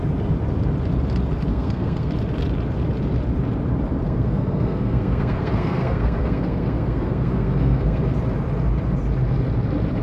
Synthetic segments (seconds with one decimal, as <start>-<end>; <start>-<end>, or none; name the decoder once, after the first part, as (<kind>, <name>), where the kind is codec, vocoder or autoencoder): 1.5-2.1 (codec, SNAC); 4.0-8.0